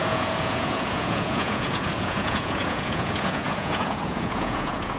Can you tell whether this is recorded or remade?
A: remade